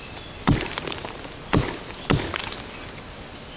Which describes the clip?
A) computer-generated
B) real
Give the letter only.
B